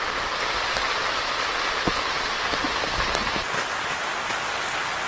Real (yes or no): yes